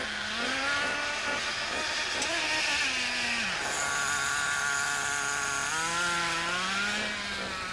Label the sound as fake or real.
real